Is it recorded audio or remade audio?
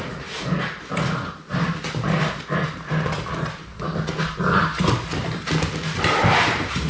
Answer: recorded